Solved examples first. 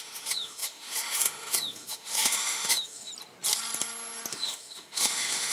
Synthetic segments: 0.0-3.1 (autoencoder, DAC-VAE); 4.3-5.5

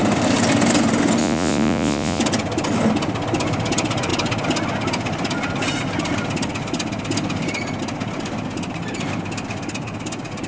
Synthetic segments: 1.2-2.2 (vocoder, Vocos)

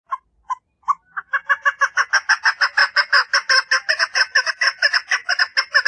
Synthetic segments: none

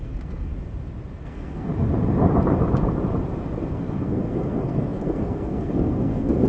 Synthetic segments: 0.0-0.5 (codec, SNAC); 1.2-1.7; 3.7-6.5

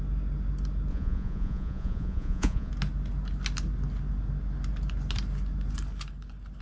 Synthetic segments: 0.9-2.7 (vocoder, Vocos)

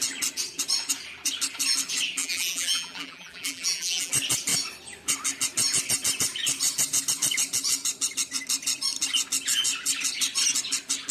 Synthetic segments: 2.2-4.1 (vocoder, BigVGAN v2)

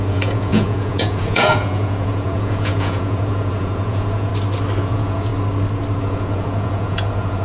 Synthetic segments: 0.0-4.3 (vocoder, Vocos); 4.8-5.3; 6.0-7.4